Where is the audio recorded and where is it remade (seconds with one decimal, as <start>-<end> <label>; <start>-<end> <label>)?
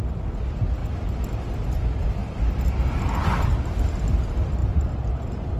0.0-0.8 recorded; 0.8-1.5 remade; 1.5-2.2 recorded; 2.2-2.8 remade; 2.8-5.6 recorded